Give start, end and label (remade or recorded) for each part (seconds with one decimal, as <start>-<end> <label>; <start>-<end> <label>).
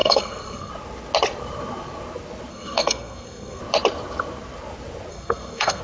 0.0-0.7 remade; 0.7-2.5 recorded; 2.5-3.6 remade; 3.6-5.1 recorded; 5.1-5.8 remade